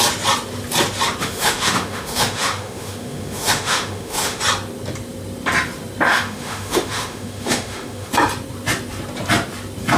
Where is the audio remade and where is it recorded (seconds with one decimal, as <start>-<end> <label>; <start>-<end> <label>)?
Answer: 0.0-1.2 recorded; 1.2-4.4 remade; 4.4-6.1 recorded; 6.1-8.1 remade; 8.1-10.0 recorded